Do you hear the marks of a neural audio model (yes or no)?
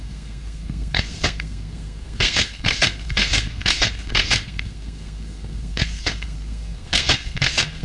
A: yes